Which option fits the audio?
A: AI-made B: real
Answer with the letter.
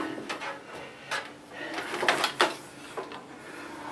B